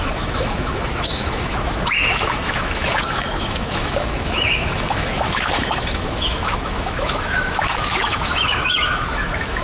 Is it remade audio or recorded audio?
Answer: remade